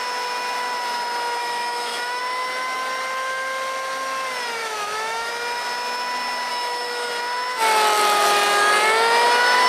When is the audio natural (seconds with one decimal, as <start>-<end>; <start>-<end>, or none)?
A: 0.0-1.4; 2.2-4.6; 5.3-6.5; 7.1-9.7